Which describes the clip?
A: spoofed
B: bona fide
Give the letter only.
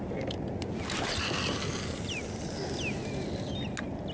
B